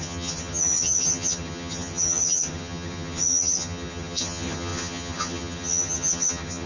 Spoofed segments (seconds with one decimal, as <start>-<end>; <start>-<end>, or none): 0.0-6.7